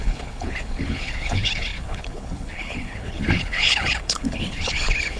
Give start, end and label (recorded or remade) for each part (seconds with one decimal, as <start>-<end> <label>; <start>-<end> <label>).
0.0-5.2 remade